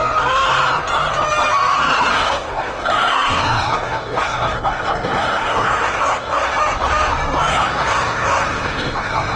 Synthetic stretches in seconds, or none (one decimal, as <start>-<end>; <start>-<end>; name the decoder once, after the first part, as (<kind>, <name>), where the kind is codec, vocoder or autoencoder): 2.1-6.5 (codec, SNAC); 7.5-9.4